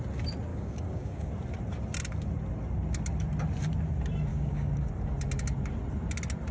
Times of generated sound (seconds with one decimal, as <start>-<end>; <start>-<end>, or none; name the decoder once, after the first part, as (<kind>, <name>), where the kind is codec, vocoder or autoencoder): 0.5-1.3 (codec, DAC); 4.3-4.9